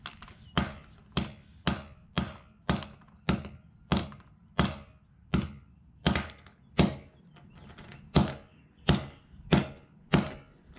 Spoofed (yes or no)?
no